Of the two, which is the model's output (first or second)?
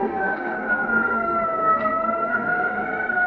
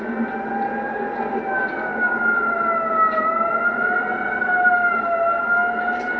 first